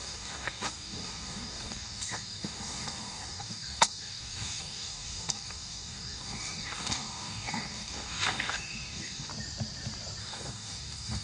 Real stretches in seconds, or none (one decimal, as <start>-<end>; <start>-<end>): 9.3-10.2